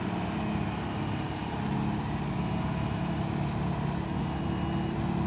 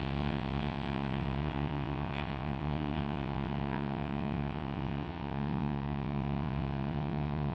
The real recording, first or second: first